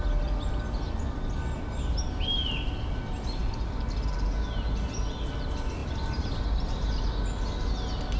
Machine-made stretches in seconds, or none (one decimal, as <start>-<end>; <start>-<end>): none